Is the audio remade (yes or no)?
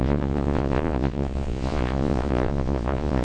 yes